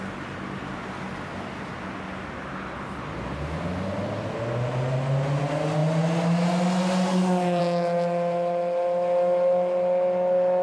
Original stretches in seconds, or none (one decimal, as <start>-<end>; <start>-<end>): 0.0-10.6

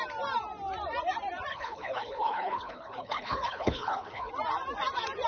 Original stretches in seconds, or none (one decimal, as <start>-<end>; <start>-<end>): 0.0-1.5; 4.3-5.3